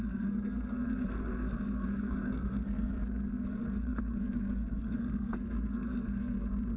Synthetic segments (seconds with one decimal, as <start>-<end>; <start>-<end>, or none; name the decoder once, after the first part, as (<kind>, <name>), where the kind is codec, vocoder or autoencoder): 0.0-6.8 (codec, SNAC)

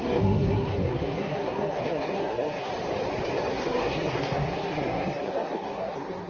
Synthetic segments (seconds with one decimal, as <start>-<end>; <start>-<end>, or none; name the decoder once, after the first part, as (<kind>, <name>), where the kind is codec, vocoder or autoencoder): 0.0-2.7 (codec, SNAC); 3.5-6.3

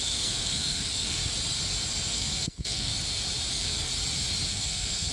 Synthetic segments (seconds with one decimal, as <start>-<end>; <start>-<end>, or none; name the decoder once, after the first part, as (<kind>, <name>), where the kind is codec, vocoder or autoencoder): 0.0-1.2 (codec, SNAC); 2.1-2.9; 3.5-3.9; 4.5-5.1